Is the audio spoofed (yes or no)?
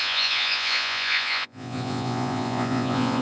yes